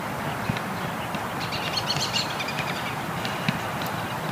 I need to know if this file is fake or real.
real